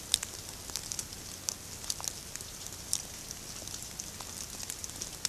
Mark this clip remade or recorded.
recorded